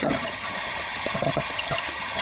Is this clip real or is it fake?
fake